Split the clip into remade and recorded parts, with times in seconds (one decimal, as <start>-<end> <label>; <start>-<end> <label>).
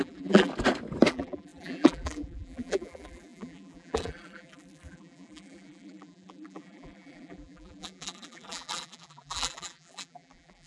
0.0-0.5 remade; 0.5-1.1 recorded; 1.1-10.7 remade